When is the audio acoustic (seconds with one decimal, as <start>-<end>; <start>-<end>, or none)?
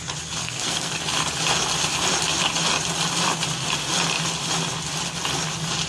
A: 0.0-0.4; 1.0-5.9